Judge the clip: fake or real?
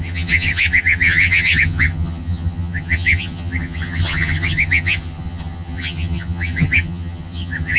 fake